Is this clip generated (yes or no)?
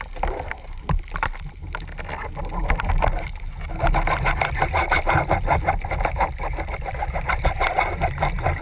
no